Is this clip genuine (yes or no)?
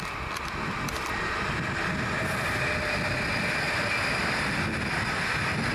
yes